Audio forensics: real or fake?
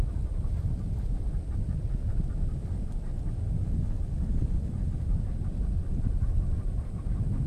real